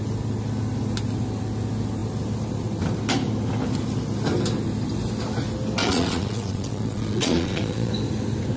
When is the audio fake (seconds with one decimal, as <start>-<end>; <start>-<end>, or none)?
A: 5.8-7.9